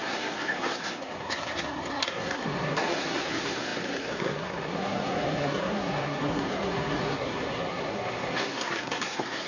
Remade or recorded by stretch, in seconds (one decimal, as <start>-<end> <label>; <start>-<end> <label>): 0.0-9.5 remade